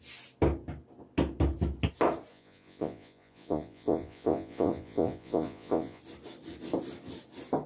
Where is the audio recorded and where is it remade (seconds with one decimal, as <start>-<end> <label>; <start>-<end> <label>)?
0.0-2.3 recorded; 2.3-6.0 remade; 6.0-7.7 recorded